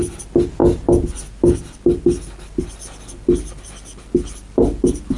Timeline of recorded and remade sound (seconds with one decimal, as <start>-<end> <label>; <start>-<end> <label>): 0.0-5.2 recorded

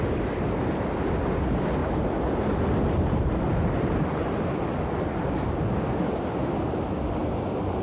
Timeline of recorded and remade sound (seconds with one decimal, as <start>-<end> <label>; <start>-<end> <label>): 0.0-1.8 recorded; 1.8-5.8 remade; 5.8-7.8 recorded

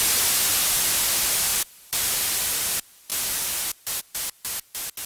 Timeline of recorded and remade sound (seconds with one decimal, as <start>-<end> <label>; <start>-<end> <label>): 0.0-1.5 recorded; 1.5-2.1 remade; 2.1-5.1 recorded

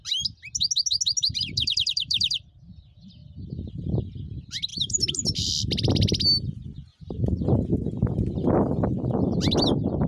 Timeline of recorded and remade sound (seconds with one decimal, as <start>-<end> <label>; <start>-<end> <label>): 0.0-1.2 recorded; 1.2-2.4 remade; 2.4-4.7 recorded; 4.7-5.5 remade; 5.5-6.9 recorded; 6.9-7.4 remade; 7.4-10.1 recorded

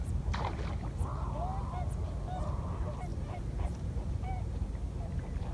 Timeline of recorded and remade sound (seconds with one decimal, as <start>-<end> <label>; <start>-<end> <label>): 0.0-0.6 remade; 0.6-3.1 recorded; 3.1-4.3 remade; 4.3-5.5 recorded